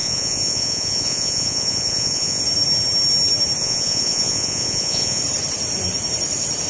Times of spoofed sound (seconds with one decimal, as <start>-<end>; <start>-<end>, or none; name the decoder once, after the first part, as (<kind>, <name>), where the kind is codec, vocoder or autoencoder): 0.0-2.4 (vocoder, Vocos); 3.6-5.2